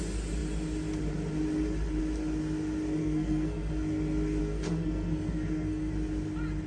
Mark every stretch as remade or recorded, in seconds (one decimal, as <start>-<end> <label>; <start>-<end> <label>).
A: 0.0-3.0 recorded; 3.0-3.7 remade; 3.7-4.4 recorded; 4.4-5.9 remade; 5.9-6.7 recorded